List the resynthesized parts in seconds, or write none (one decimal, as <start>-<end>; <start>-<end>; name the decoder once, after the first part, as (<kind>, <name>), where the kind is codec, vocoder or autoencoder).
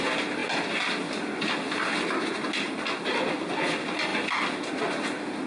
none